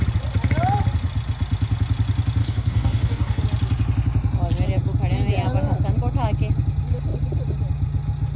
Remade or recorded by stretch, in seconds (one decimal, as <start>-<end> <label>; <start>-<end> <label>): 0.0-2.4 recorded; 2.4-3.4 remade; 3.4-8.4 recorded